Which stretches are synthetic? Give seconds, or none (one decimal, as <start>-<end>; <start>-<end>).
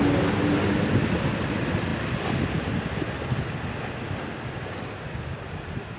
none